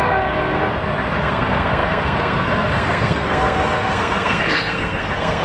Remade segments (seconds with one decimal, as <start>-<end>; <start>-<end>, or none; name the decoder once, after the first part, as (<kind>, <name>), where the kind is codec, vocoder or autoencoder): 0.0-0.6 (codec, SNAC); 1.2-5.4